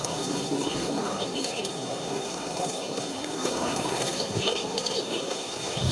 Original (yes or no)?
no